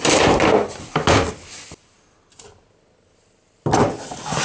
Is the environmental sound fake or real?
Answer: real